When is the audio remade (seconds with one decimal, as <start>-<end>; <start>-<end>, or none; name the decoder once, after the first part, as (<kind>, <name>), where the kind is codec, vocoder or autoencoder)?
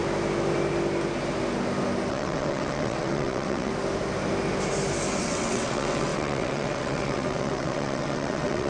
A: 2.1-3.7 (vocoder, WaveNeXt); 5.2-8.7